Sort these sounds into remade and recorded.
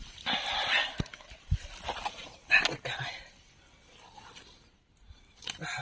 recorded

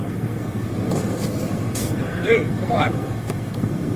remade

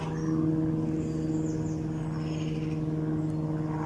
recorded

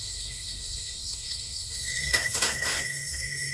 remade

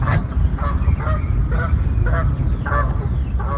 recorded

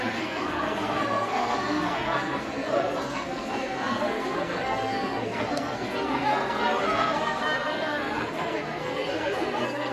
remade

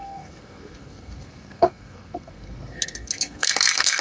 remade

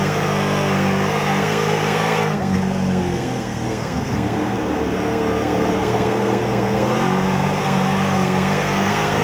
remade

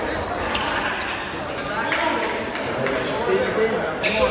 recorded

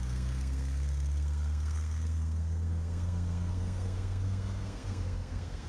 remade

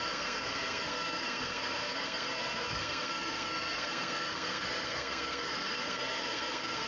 remade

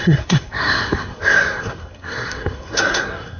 remade